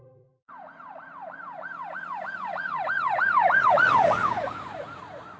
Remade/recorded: remade